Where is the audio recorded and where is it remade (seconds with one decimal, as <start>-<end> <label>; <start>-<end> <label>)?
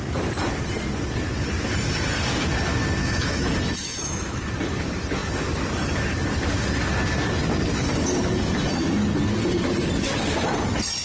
0.0-3.0 recorded; 3.0-4.5 remade; 4.5-11.0 recorded